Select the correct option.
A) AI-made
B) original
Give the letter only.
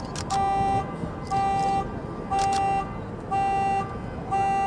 B